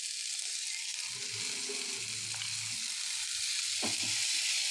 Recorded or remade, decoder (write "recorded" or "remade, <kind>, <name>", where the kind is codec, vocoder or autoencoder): recorded